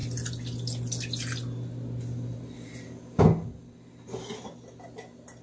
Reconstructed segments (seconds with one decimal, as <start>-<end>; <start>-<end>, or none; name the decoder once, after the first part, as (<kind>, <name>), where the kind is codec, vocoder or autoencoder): none